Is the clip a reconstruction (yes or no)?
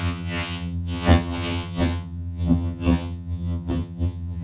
yes